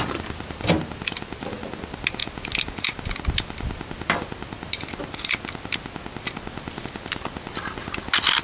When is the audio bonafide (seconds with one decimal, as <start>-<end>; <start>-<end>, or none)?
0.0-8.4